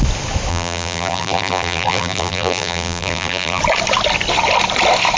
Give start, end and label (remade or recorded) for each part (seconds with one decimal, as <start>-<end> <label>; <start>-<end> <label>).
0.0-0.5 recorded; 0.5-3.6 remade; 3.6-5.2 recorded